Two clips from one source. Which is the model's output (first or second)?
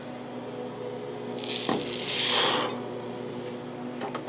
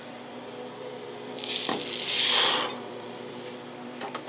second